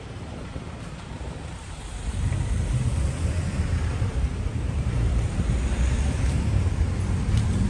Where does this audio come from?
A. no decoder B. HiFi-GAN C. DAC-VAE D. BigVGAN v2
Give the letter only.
D